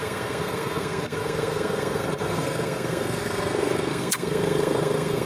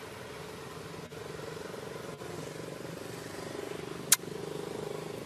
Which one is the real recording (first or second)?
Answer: second